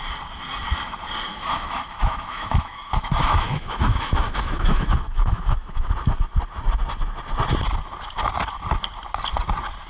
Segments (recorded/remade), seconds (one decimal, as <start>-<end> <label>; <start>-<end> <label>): 0.0-1.3 recorded; 1.3-5.9 remade; 5.9-9.9 recorded